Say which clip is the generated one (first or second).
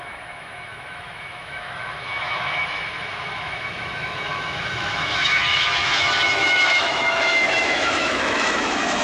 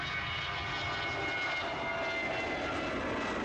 first